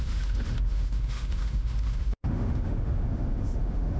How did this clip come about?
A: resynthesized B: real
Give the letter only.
A